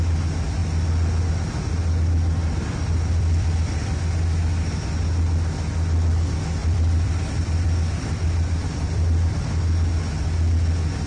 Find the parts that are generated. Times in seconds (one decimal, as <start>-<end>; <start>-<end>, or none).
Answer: 2.4-4.0; 6.6-9.3